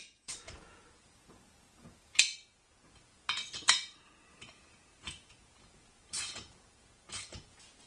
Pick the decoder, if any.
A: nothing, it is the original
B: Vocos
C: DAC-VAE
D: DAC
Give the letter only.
B